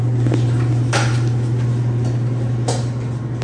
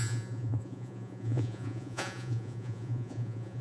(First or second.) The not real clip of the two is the second